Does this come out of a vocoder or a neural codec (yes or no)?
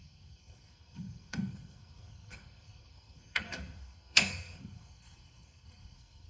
yes